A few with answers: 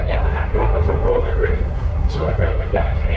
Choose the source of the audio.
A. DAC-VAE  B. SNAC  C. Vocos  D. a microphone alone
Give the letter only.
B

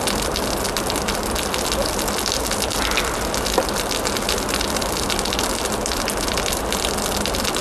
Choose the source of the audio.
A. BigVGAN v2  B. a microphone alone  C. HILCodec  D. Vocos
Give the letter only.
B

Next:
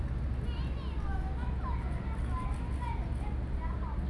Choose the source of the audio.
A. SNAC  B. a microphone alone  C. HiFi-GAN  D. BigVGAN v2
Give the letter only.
B